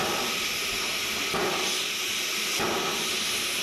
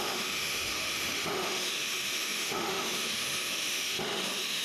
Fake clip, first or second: second